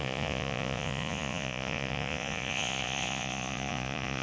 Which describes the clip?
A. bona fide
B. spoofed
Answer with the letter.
B